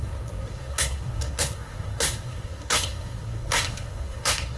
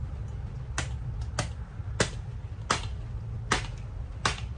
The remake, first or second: first